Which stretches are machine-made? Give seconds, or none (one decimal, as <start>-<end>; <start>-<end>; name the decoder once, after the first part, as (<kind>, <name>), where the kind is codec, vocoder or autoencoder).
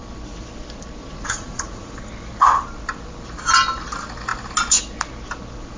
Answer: 1.0-1.9 (vocoder, Vocos)